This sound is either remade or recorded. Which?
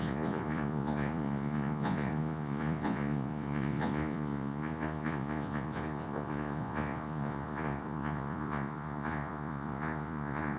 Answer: remade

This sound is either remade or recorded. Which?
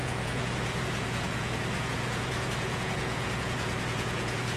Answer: remade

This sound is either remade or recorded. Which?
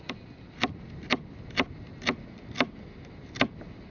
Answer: recorded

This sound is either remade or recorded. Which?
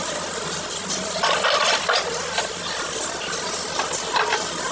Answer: recorded